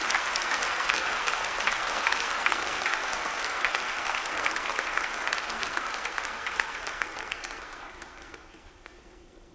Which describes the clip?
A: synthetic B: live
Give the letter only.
A